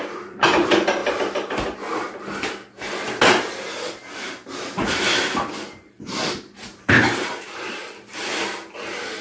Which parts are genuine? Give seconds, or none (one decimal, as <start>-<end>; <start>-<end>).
1.0-3.6; 8.3-9.2